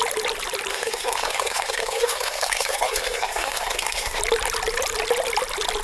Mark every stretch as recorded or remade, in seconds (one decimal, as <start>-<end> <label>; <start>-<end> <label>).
0.0-0.7 recorded; 0.7-4.2 remade; 4.2-5.8 recorded